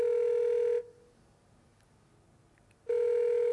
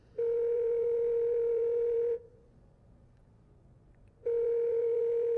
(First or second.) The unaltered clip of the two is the first